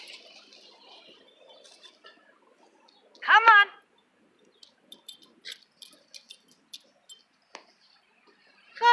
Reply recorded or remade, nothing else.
recorded